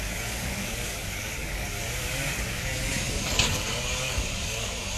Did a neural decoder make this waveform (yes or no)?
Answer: yes